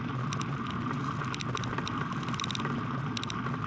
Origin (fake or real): real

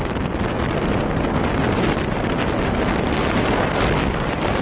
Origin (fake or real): real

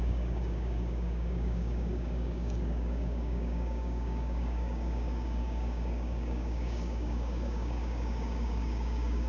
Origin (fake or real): fake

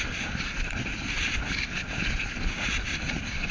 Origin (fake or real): real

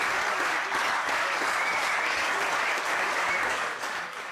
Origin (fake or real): fake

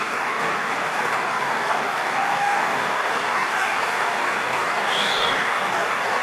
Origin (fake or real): fake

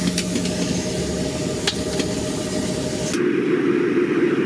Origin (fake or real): real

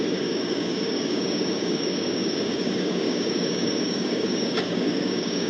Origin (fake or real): fake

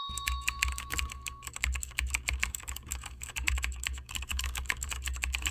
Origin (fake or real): fake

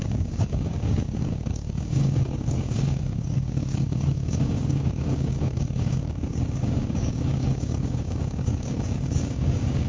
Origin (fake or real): fake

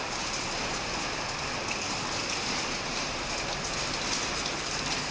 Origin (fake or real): real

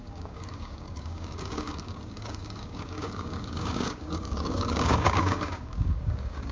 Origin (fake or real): fake